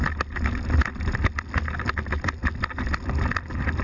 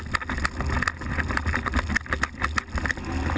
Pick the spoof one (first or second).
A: first